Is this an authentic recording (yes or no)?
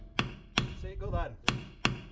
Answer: yes